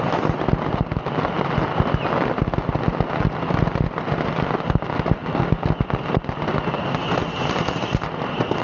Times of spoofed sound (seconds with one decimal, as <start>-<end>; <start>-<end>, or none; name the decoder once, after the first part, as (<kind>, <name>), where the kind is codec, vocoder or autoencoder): none